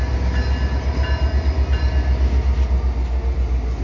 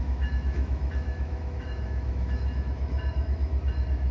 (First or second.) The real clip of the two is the first